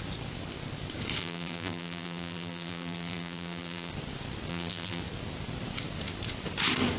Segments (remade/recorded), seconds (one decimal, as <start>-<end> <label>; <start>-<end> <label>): 0.0-1.2 recorded; 1.2-3.9 remade; 3.9-4.5 recorded; 4.5-5.0 remade; 5.0-7.0 recorded